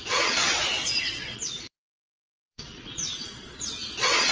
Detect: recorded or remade remade